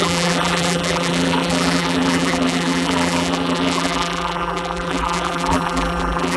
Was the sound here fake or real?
fake